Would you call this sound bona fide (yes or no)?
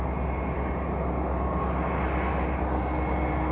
yes